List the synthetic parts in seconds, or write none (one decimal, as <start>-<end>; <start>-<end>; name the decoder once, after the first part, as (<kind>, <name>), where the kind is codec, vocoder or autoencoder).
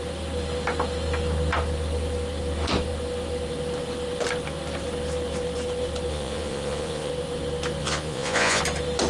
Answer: 6.1-7.1 (vocoder, Vocos); 7.8-8.6